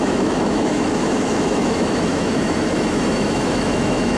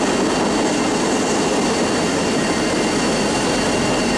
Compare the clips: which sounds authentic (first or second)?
second